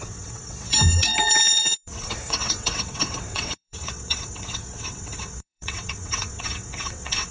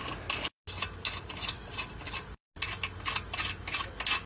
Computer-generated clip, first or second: first